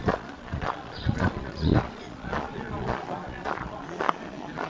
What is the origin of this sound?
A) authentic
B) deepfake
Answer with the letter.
B